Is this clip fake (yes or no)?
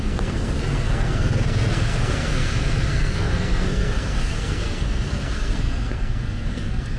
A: yes